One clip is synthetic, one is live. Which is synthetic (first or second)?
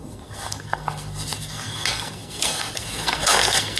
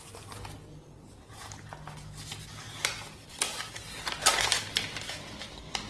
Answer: first